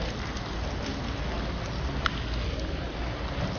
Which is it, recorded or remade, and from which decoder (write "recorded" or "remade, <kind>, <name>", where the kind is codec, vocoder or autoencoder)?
recorded